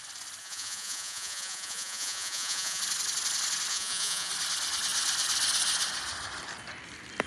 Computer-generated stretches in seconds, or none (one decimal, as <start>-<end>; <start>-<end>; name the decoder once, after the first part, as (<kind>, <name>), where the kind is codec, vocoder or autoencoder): 0.4-2.8 (vocoder, Vocos); 3.7-4.3